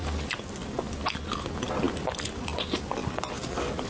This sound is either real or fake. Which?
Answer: real